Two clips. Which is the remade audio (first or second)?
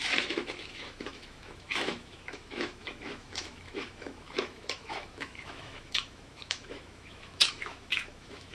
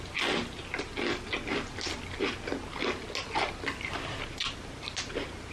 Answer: first